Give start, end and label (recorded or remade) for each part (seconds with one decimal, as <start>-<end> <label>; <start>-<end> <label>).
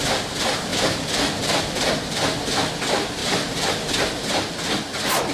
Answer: 0.0-5.3 recorded